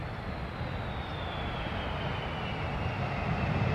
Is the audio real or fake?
real